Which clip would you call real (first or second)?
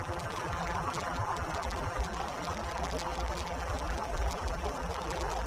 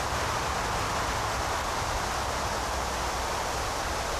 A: second